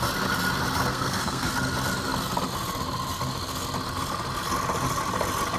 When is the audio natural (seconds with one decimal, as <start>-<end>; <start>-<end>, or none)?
0.0-0.9; 1.5-5.6